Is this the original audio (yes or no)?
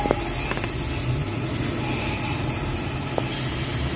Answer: yes